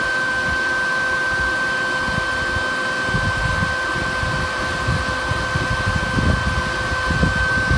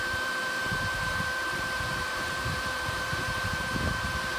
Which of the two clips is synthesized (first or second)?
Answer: second